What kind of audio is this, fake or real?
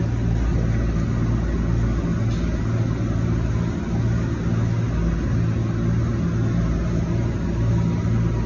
real